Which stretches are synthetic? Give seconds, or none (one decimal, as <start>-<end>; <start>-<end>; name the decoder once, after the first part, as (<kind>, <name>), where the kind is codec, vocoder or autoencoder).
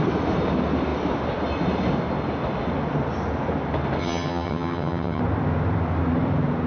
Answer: 4.0-5.2 (vocoder, HiFi-GAN)